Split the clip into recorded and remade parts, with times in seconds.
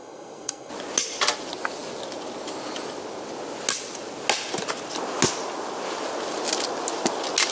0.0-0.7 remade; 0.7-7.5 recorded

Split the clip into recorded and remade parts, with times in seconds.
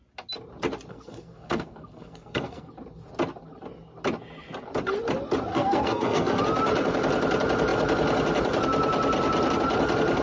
0.0-0.9 recorded; 0.9-2.7 remade; 2.7-5.5 recorded; 5.5-6.4 remade; 6.4-10.2 recorded